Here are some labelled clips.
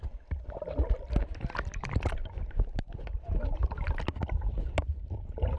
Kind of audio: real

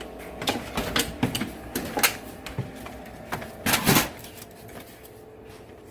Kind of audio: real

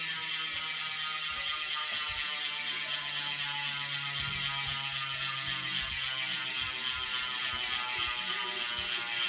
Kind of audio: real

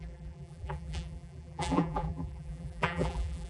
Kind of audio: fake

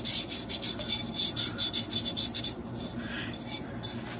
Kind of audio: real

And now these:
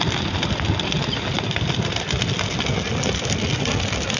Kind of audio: fake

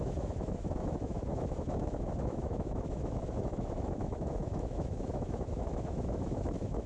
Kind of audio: fake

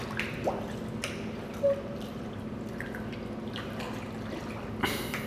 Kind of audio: real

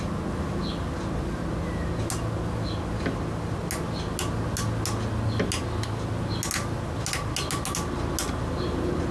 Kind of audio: real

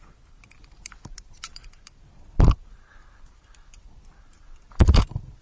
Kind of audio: fake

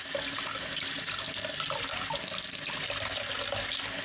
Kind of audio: real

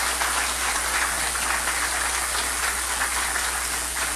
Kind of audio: real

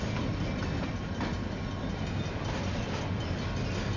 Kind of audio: real